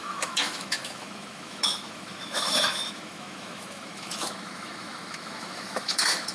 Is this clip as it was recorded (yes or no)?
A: no